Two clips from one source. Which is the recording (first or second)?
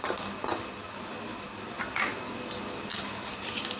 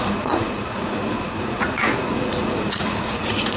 first